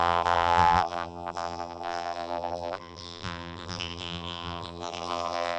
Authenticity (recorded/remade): remade